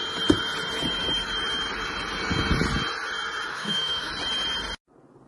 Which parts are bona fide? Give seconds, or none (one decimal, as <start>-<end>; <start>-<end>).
0.0-3.5; 4.1-5.3